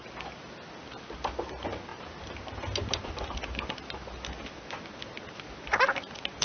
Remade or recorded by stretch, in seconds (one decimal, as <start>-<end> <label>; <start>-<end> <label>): 0.0-6.4 recorded